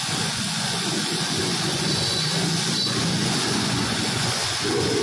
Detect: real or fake fake